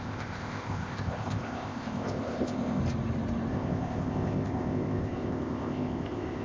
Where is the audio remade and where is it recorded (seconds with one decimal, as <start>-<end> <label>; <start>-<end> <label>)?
0.0-2.8 remade; 2.8-3.5 recorded; 3.5-6.4 remade